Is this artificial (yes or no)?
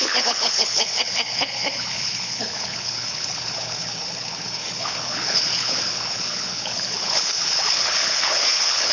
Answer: yes